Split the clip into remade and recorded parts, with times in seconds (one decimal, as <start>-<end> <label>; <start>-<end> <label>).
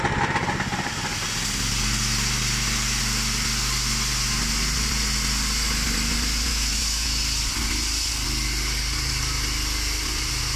0.0-6.5 recorded; 6.5-7.2 remade; 7.2-10.6 recorded